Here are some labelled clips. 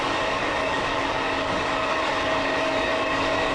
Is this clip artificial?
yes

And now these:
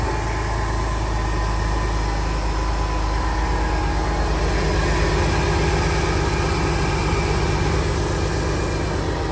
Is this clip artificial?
no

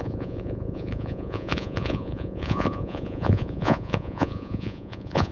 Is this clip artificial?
yes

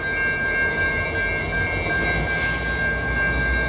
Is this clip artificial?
no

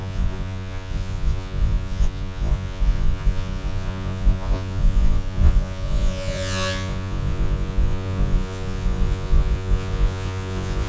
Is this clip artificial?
yes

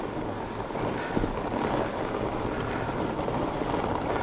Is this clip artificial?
no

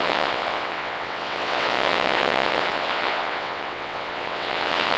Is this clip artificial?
yes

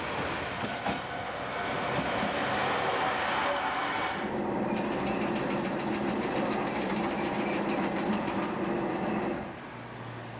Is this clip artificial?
no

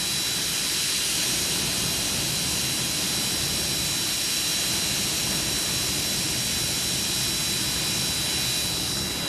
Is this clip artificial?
no